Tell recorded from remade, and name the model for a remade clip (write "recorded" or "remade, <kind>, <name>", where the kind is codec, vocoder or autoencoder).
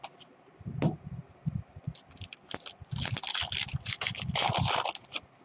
recorded